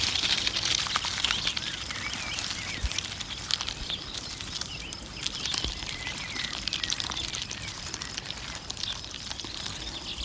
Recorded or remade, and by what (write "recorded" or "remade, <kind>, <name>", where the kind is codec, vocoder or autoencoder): remade, vocoder, BigVGAN v2